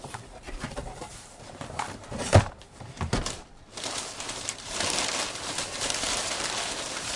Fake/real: fake